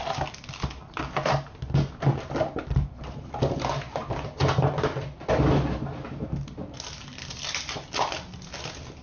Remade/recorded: recorded